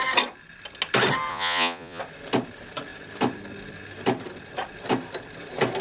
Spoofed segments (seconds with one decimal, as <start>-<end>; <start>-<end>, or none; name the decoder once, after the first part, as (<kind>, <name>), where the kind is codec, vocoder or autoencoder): 1.3-2.0 (vocoder, Vocos)